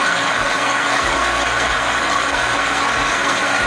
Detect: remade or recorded remade